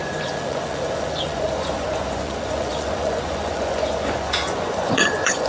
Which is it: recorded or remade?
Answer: remade